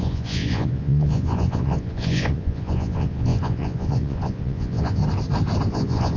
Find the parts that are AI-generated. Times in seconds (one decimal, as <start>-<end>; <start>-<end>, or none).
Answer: 0.0-5.0; 5.7-6.2